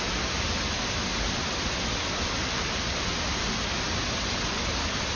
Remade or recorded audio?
recorded